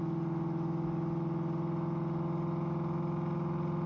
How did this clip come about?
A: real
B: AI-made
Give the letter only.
A